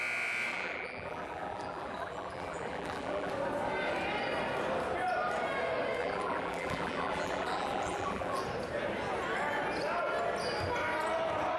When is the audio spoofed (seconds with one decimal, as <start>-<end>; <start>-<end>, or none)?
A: 0.5-3.3; 6.0-8.4